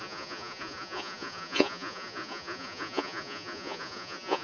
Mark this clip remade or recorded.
remade